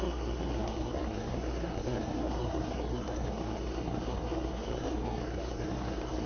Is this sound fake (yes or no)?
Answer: yes